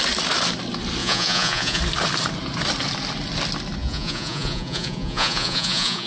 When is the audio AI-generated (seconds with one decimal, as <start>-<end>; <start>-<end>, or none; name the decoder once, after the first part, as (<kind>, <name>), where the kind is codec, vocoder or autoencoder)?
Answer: 1.0-1.8 (vocoder, Vocos); 3.8-6.1